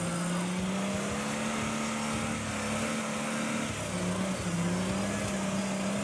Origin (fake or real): real